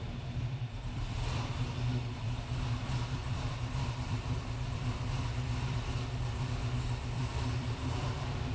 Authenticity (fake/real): fake